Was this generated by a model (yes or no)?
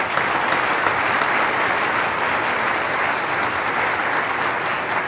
no